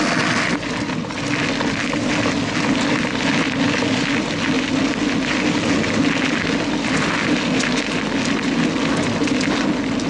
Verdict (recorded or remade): recorded